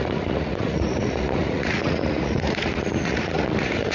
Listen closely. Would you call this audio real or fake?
fake